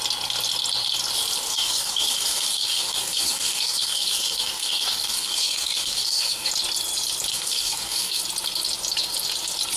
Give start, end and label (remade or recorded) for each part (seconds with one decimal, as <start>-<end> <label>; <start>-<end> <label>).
0.0-1.5 recorded; 1.5-6.5 remade; 6.5-7.3 recorded; 7.3-8.2 remade; 8.2-9.8 recorded